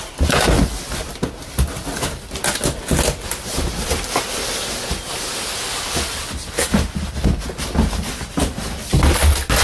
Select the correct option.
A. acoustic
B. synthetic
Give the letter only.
A